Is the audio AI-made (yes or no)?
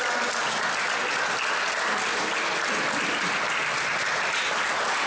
no